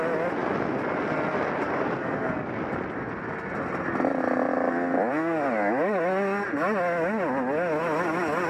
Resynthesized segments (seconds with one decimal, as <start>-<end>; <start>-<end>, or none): none